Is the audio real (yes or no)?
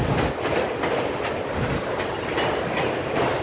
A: yes